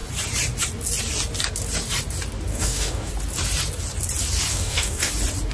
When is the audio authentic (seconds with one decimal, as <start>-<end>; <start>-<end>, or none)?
0.0-2.5; 3.1-4.5; 5.1-5.5